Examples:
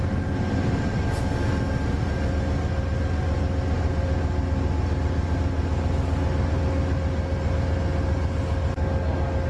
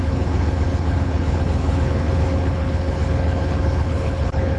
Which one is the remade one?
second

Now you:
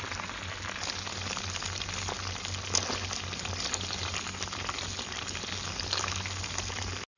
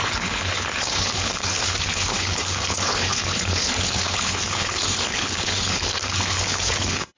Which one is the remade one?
second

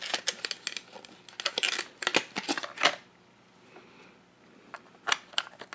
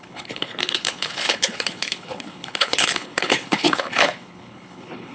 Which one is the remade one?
second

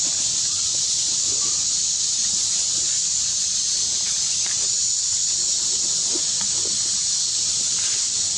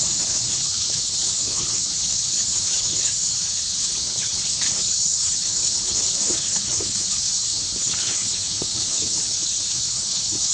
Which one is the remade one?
second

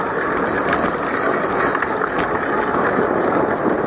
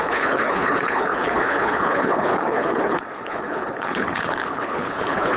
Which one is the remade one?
second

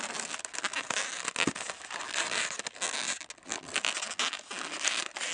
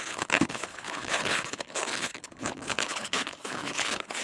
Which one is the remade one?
second